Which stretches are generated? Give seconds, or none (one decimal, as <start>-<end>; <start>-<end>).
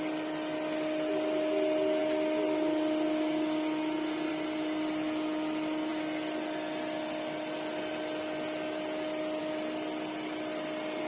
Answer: none